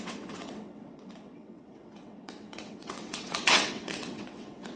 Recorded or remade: remade